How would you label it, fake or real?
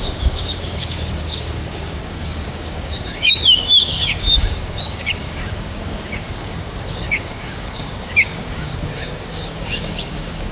fake